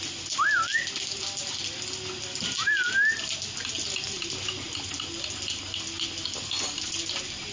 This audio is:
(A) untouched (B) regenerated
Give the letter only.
A